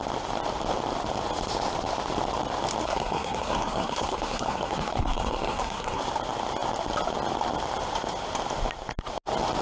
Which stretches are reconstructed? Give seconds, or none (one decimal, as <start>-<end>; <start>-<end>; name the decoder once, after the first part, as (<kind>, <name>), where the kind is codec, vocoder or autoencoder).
2.8-6.0 (codec, SNAC)